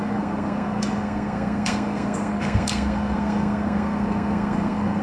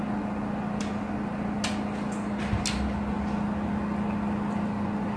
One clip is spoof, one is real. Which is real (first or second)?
second